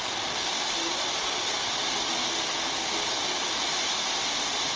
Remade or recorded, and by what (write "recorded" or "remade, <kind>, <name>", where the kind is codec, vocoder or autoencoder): recorded